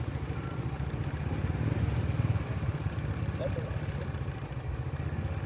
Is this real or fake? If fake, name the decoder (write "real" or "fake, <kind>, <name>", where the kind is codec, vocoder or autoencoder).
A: real